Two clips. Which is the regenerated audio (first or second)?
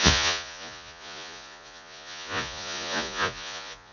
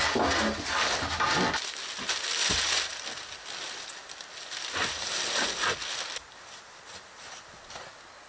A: first